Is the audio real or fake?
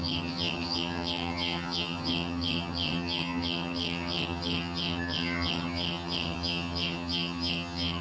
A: fake